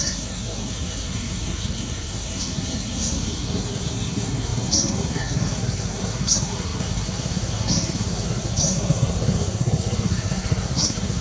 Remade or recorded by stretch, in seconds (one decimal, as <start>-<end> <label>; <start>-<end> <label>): 0.0-11.2 remade